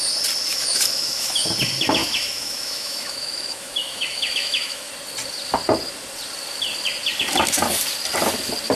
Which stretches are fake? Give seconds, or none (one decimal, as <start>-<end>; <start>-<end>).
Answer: 0.5-1.5; 2.0-4.9